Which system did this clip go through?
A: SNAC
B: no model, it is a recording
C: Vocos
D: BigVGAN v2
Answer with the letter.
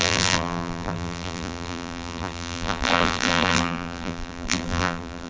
D